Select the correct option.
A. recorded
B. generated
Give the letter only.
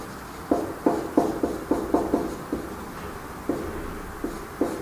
A